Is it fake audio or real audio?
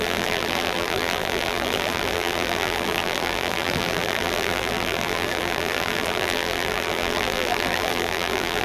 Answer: fake